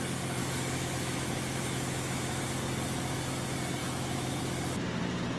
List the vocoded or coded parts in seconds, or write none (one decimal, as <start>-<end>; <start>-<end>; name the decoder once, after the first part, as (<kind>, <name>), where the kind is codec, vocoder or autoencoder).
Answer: 0.4-2.4 (autoencoder, DAC-VAE); 3.8-4.4

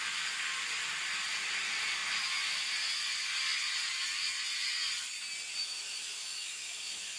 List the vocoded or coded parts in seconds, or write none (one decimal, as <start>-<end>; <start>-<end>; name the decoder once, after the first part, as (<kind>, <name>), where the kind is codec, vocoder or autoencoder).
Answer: 5.6-7.2 (autoencoder, DAC-VAE)

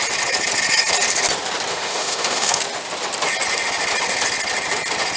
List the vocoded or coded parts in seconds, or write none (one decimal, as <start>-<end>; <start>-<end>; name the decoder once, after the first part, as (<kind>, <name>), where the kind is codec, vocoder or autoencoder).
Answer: 1.7-2.6 (autoencoder, DAC-VAE)

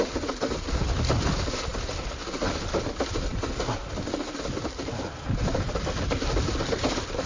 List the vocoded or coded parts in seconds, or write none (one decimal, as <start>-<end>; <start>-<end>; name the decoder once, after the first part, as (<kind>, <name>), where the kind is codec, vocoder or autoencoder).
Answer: none

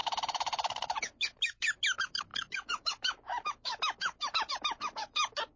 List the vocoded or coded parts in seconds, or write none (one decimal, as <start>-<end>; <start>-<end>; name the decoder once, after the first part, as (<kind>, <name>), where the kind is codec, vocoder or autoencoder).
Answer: 0.0-5.6 (autoencoder, DAC-VAE)